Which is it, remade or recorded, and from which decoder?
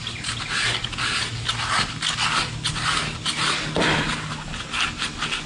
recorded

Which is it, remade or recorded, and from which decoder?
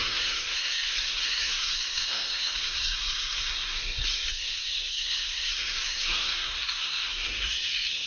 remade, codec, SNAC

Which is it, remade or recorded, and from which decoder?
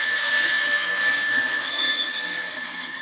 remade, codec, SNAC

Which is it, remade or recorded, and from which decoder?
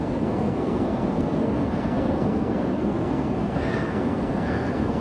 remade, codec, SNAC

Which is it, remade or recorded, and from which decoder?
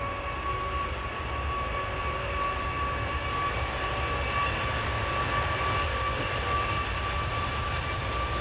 recorded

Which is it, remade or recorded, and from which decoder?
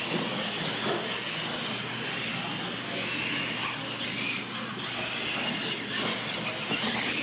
recorded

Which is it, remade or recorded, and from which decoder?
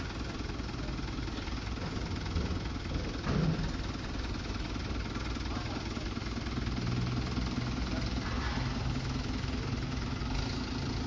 recorded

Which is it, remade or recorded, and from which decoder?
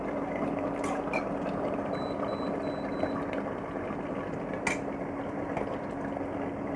recorded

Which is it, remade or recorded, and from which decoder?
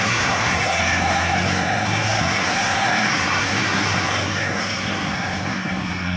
remade, codec, SNAC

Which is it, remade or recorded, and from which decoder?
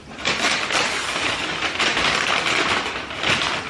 recorded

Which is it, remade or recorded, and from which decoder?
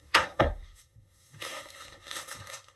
remade, codec, SNAC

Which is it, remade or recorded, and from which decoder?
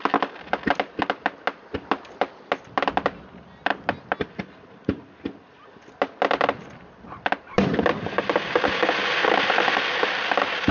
recorded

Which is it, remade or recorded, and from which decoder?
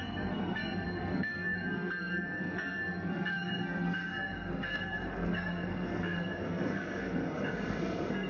remade, codec, SNAC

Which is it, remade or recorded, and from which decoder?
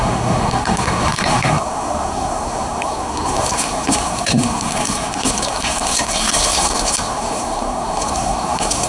remade, codec, SNAC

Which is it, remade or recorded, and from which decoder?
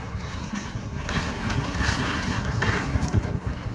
remade, codec, SNAC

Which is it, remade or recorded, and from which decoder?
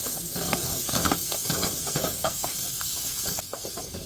remade, codec, SNAC